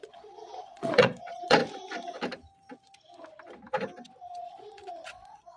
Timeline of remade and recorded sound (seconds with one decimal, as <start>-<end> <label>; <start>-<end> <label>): 0.0-1.6 remade; 1.6-4.4 recorded; 4.4-5.6 remade